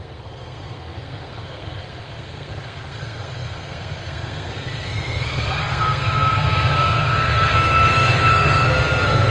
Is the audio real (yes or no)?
no